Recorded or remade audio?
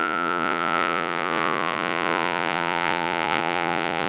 remade